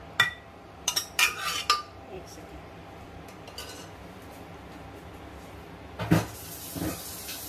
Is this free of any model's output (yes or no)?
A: yes